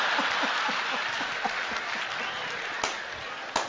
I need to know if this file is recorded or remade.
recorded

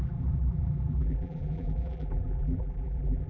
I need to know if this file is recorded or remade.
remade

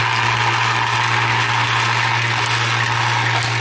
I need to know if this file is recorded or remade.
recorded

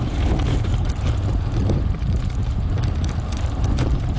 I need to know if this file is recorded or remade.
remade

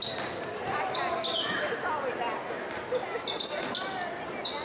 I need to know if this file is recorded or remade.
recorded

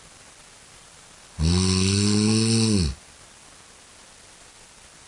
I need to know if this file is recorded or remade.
recorded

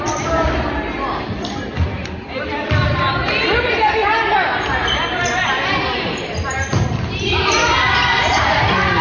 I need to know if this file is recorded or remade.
recorded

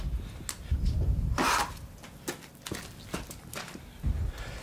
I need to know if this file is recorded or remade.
recorded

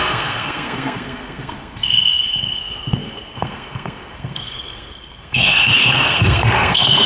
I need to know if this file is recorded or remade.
remade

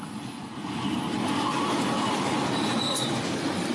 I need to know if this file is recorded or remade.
recorded